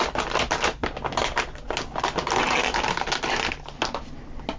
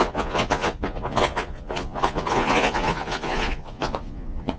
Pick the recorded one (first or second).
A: first